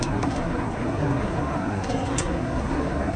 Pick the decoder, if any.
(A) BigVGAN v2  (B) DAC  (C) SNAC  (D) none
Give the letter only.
C